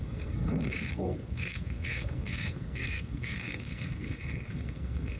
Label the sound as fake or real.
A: fake